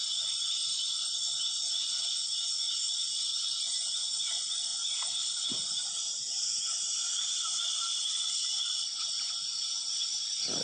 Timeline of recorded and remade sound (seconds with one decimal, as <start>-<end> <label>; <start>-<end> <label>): 0.0-3.3 recorded; 3.3-4.2 remade; 4.2-10.6 recorded